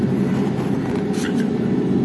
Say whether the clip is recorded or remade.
recorded